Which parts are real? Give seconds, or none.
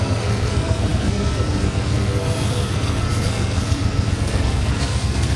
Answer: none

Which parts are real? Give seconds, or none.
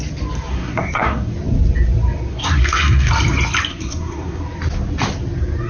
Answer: 0.0-0.5; 1.3-2.3; 3.1-3.7; 4.4-5.7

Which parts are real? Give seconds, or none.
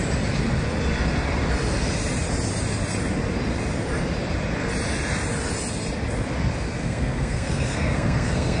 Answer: 0.0-6.8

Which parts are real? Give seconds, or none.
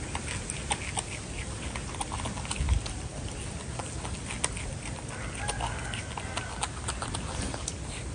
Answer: 0.0-8.1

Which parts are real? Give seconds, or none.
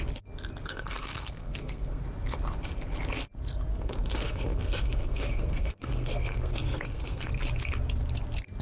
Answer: 0.0-0.6; 2.0-3.7; 7.3-8.6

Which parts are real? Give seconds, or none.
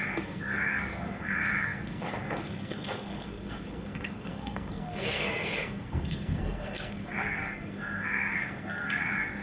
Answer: none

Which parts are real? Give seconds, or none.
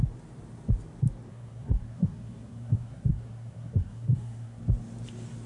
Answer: 0.0-1.3; 4.6-5.5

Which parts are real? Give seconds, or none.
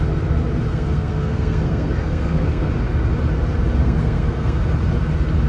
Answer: 0.0-0.7; 2.7-3.8; 4.6-5.5